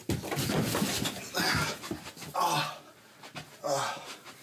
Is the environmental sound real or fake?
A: real